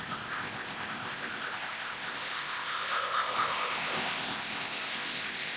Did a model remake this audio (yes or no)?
yes